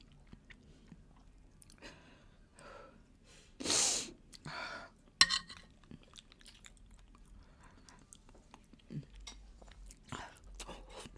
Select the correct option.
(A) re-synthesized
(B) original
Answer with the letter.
B